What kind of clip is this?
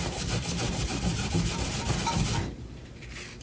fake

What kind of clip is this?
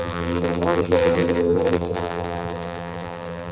fake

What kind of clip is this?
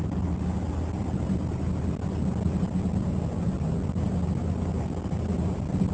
real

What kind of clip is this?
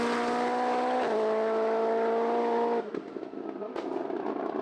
real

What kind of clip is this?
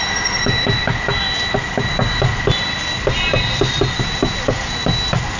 real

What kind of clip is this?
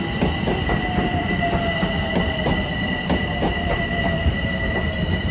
fake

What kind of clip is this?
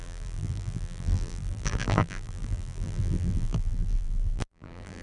fake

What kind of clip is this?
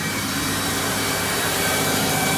fake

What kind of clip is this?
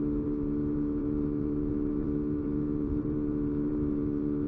fake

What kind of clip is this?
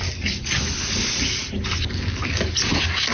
real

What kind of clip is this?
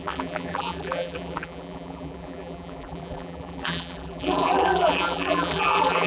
fake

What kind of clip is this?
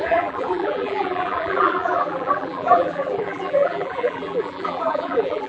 fake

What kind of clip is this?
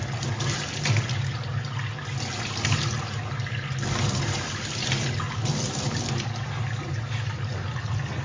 real